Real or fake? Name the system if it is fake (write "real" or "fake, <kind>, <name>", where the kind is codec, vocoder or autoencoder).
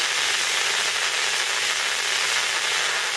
real